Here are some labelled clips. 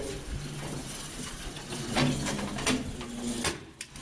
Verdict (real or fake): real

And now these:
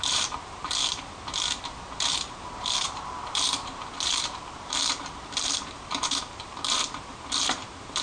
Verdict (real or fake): fake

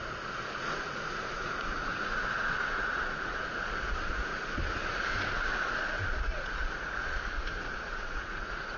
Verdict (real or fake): fake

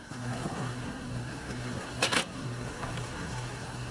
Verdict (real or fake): fake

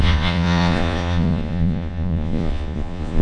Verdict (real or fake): fake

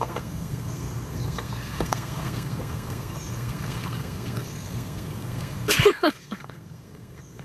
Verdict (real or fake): fake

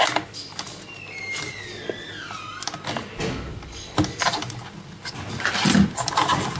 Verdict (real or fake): real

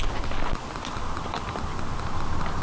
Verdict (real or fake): real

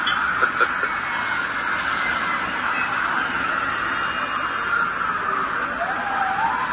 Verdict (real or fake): real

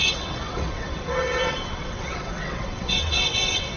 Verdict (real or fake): fake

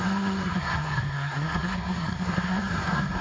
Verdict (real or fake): fake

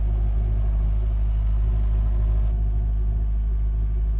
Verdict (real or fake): real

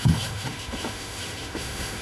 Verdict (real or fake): fake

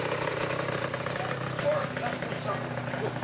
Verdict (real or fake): real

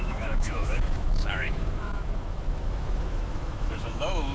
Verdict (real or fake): fake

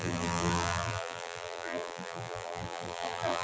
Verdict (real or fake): fake